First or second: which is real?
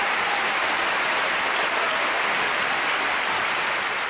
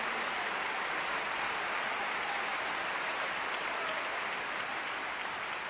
second